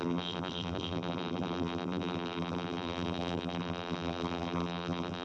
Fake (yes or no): yes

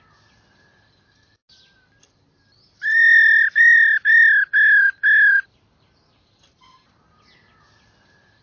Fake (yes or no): no